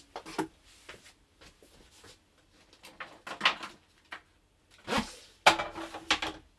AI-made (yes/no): no